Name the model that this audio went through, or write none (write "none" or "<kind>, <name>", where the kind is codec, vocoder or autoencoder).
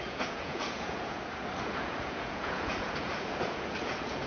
vocoder, Vocos